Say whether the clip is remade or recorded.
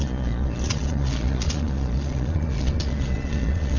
remade